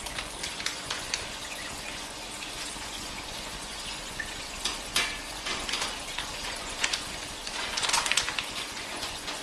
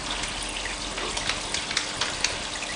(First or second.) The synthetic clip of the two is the first